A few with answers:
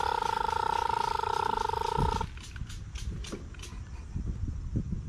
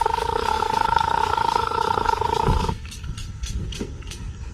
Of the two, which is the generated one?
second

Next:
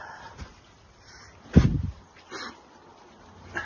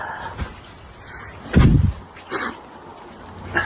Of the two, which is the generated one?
first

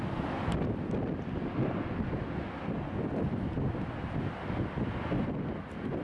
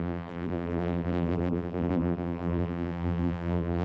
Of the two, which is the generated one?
second